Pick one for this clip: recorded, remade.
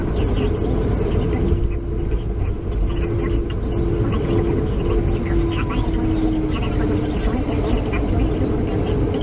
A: recorded